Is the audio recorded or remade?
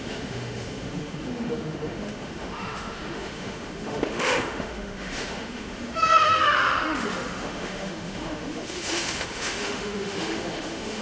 remade